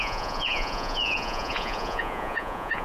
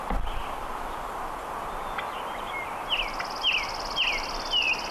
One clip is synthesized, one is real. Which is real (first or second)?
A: second